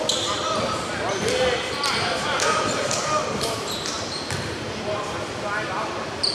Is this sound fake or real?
real